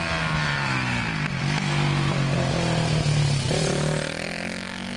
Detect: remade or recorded recorded